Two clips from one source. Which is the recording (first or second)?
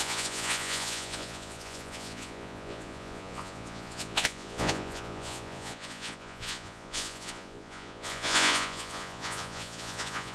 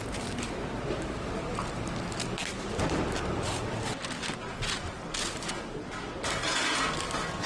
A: second